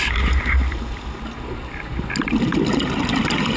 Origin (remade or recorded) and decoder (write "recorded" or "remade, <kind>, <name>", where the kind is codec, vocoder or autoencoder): recorded